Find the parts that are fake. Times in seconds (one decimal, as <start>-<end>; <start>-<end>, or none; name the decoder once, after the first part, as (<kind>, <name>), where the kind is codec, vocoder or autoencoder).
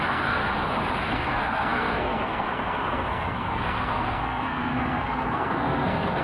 0.0-0.4 (codec, SNAC); 1.1-6.2